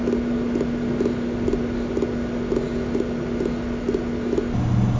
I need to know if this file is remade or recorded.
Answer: recorded